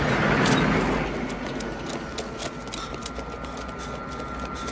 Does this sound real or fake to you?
real